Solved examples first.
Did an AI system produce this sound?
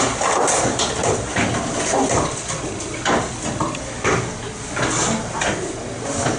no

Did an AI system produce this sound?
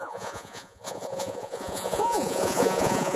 yes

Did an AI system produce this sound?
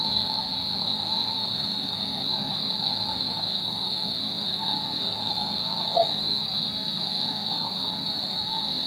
yes